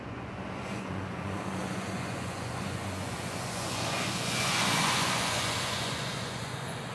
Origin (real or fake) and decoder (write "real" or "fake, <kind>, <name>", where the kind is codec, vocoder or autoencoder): fake, vocoder, Vocos